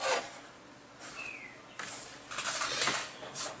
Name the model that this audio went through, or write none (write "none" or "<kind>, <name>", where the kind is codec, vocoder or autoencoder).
none